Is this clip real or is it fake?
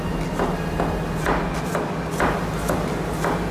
real